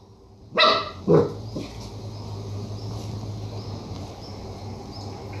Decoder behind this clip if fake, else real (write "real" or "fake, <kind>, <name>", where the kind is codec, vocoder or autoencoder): real